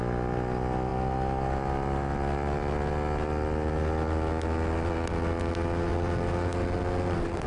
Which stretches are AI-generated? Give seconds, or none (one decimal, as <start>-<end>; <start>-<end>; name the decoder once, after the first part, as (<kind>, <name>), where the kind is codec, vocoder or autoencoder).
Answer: none